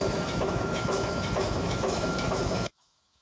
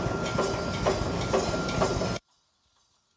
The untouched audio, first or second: second